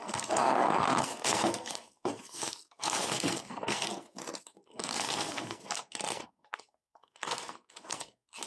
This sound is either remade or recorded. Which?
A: remade